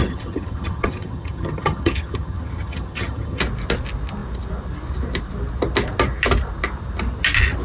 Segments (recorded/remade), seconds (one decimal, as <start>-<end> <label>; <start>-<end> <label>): 0.0-3.4 remade; 3.4-7.6 recorded

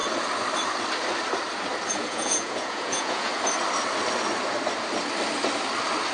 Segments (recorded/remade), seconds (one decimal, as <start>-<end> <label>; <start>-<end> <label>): 0.0-1.9 recorded; 1.9-3.3 remade; 3.3-6.1 recorded

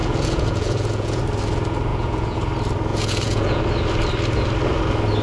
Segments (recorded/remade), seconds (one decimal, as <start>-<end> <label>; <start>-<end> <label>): 0.0-1.2 remade; 1.2-1.9 recorded; 1.9-2.4 remade; 2.4-2.9 recorded; 2.9-3.6 remade; 3.6-5.2 recorded

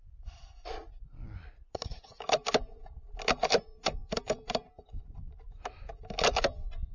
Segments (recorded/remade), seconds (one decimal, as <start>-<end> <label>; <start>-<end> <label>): 0.0-4.0 recorded; 4.0-5.0 remade; 5.0-6.9 recorded

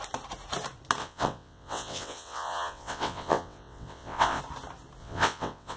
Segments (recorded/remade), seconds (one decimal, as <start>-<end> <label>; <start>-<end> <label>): 0.0-1.0 recorded; 1.0-4.4 remade; 4.4-5.0 recorded; 5.0-5.8 remade

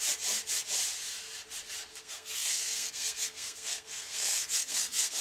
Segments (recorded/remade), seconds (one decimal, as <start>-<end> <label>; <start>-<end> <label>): 0.0-1.9 recorded; 1.9-5.2 remade